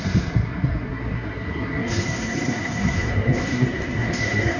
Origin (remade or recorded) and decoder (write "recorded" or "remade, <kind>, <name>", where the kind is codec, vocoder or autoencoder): remade, codec, SNAC